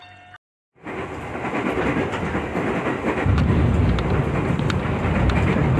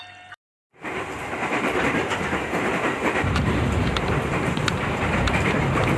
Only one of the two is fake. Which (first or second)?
second